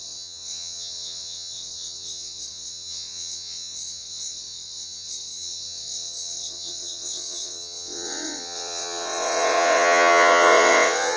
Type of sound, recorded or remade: remade